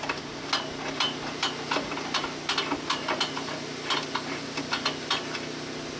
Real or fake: real